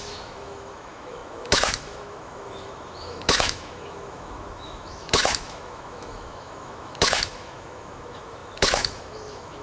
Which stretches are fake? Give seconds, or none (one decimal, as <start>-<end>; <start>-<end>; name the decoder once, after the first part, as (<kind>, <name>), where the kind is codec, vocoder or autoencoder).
0.0-9.6 (autoencoder, DAC-VAE)